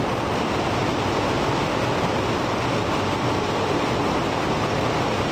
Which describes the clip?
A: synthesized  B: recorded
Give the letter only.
B